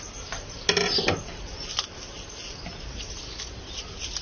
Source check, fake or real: real